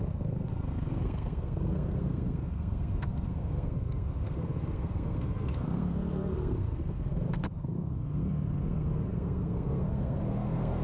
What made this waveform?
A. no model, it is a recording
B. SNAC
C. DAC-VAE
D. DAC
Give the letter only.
B